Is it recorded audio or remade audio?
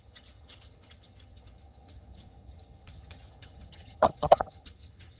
remade